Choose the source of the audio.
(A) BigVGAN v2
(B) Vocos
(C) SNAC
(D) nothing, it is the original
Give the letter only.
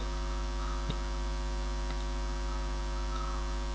D